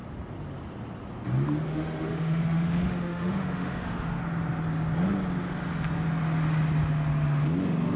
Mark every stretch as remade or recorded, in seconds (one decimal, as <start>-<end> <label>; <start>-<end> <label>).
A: 0.0-1.7 recorded; 1.7-4.2 remade; 4.2-8.0 recorded